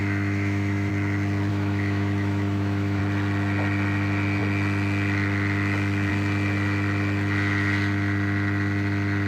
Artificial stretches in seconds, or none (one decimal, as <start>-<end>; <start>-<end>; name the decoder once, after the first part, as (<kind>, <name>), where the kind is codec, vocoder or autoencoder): 0.0-0.9 (autoencoder, DAC-VAE); 1.5-3.0